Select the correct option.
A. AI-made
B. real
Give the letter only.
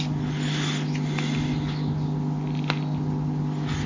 B